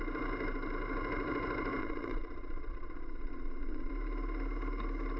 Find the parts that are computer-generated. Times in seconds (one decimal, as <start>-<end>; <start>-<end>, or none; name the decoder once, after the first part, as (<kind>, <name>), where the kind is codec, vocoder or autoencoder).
1.8-3.9 (vocoder, Vocos)